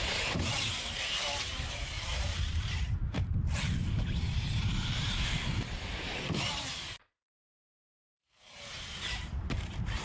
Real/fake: fake